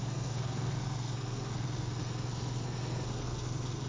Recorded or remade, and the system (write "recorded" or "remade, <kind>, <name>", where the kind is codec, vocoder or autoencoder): remade, codec, SNAC